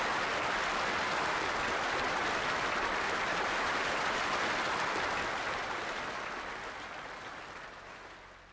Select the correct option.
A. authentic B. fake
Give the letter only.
A